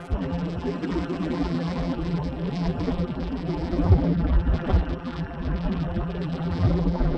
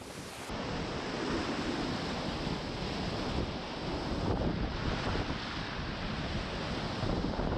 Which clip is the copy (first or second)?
first